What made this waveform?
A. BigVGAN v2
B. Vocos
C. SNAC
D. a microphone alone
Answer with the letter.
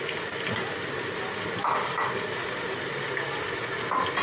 D